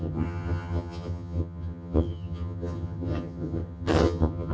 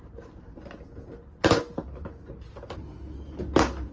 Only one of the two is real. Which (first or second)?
second